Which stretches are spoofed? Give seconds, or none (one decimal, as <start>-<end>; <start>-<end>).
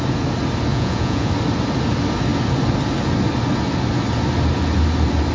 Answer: 0.7-1.3